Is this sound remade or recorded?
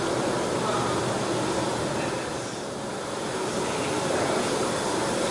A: recorded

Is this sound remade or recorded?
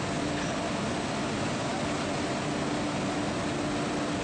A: recorded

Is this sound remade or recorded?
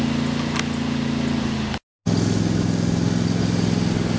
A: recorded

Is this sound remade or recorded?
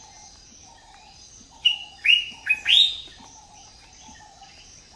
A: recorded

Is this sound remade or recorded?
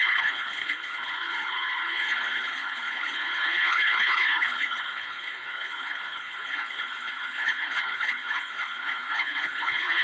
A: remade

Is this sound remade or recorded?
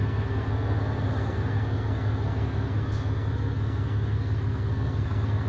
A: remade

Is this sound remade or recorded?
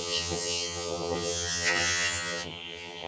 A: remade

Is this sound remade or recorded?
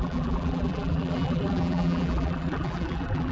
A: remade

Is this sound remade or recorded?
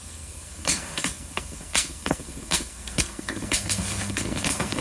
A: remade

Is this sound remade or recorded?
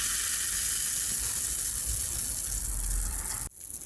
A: recorded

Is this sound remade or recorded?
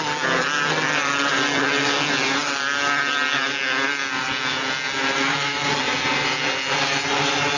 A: recorded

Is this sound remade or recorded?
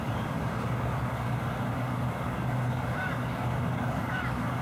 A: remade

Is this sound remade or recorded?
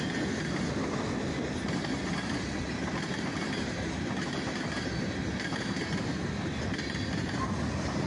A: recorded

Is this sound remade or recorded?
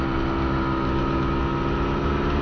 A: recorded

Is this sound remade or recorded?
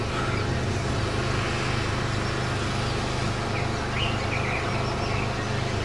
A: recorded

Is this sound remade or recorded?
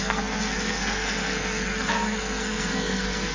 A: remade